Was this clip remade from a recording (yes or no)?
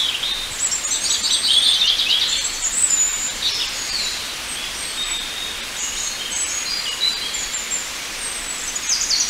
no